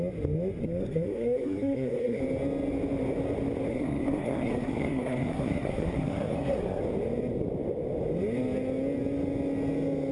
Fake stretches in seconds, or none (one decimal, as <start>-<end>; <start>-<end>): 0.6-2.2; 3.7-6.8